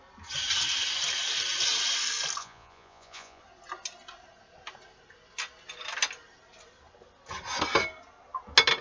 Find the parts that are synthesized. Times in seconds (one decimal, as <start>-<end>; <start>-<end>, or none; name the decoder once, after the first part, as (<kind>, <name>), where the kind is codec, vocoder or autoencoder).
2.4-3.4 (vocoder, Vocos)